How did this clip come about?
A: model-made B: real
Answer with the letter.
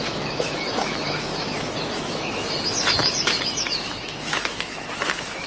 A